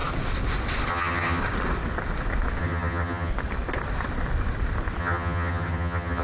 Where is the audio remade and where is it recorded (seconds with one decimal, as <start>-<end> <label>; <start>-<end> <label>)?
0.0-0.9 recorded; 0.9-1.4 remade; 1.4-2.6 recorded; 2.6-3.3 remade; 3.3-5.0 recorded; 5.0-6.2 remade